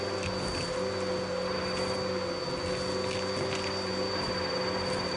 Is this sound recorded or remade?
recorded